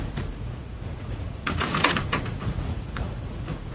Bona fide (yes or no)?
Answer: no